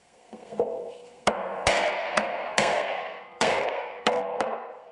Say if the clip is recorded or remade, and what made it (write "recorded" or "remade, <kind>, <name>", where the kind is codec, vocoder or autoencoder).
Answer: remade, codec, SNAC